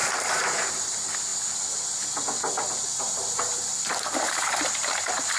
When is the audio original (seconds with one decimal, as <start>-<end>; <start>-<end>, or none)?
0.7-5.4